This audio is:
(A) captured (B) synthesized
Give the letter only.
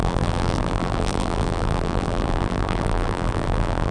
B